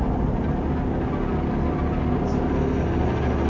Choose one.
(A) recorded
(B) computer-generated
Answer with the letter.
A